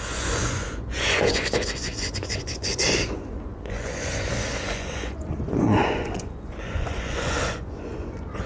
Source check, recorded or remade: remade